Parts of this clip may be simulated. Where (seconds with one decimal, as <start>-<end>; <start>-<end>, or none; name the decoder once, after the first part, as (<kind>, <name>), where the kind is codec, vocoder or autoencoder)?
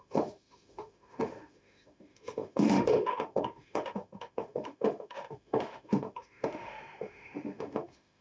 0.0-8.2 (autoencoder, DAC-VAE)